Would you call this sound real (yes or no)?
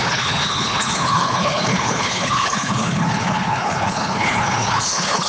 no